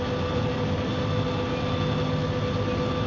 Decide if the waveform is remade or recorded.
recorded